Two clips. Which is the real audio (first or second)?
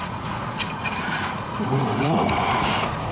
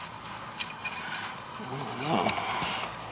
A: second